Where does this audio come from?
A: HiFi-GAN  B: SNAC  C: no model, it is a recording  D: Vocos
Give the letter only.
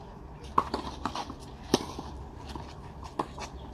C